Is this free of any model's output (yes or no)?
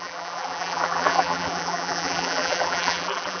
no